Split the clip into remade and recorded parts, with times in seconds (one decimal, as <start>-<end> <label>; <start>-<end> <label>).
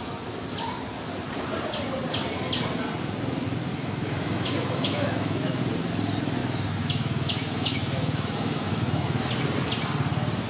0.0-3.7 recorded; 3.7-5.6 remade; 5.6-6.4 recorded; 6.4-9.3 remade; 9.3-10.5 recorded